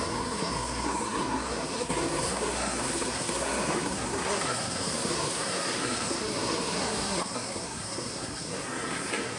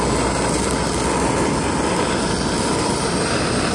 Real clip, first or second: second